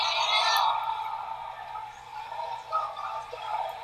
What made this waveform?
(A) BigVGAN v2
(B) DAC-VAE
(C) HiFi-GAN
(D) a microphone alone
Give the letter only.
A